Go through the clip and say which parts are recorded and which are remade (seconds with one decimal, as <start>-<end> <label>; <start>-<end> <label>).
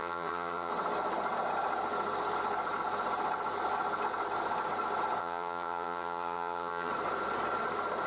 0.0-0.7 remade; 0.7-5.2 recorded; 5.2-6.9 remade; 6.9-8.1 recorded